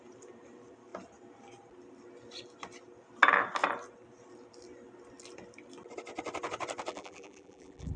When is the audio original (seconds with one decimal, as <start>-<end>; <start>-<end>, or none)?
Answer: 0.0-6.9